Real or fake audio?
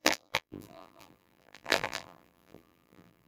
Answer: fake